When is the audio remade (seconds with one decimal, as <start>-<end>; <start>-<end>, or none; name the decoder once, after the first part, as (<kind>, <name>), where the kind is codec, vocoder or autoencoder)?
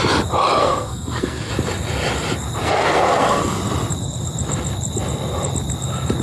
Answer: 0.6-1.5 (codec, SNAC); 2.6-3.6